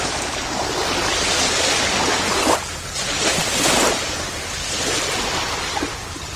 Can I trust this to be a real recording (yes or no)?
yes